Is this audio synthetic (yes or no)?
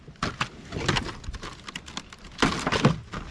no